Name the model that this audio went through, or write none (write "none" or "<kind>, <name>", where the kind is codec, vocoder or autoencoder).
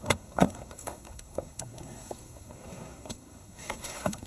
codec, SNAC